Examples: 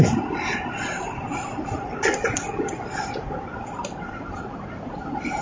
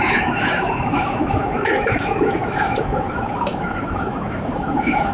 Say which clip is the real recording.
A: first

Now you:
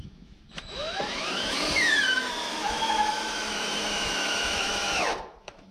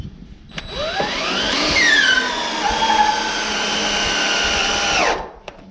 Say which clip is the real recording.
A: second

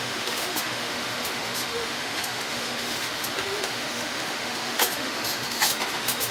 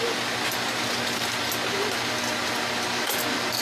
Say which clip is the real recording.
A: second